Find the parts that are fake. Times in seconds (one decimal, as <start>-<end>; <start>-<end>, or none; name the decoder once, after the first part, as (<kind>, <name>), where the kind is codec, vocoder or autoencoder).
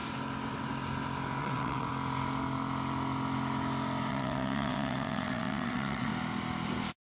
1.4-1.9 (vocoder, WaveNeXt); 4.1-6.1